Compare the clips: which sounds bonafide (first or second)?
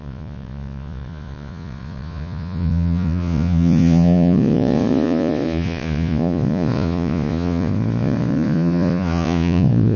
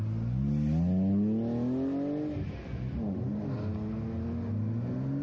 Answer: second